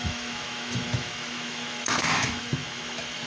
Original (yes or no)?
no